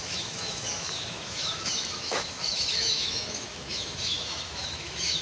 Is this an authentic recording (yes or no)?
no